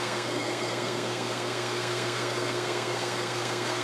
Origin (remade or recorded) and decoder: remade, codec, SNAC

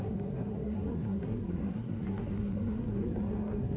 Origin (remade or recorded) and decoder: remade, codec, SNAC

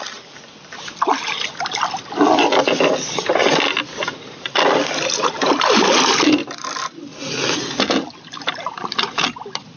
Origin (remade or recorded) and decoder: recorded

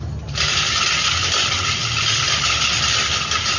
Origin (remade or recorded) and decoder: recorded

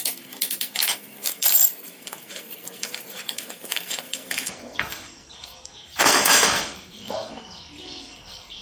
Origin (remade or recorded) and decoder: remade, codec, SNAC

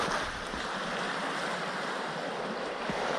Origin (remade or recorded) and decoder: recorded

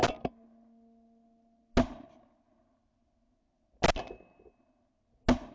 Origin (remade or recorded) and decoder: recorded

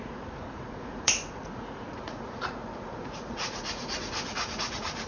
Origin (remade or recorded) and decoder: remade, vocoder, Vocos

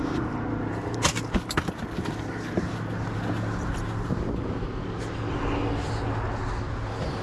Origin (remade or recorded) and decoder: recorded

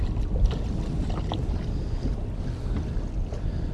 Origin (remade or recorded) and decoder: recorded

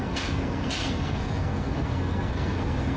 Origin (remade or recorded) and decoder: remade, codec, SNAC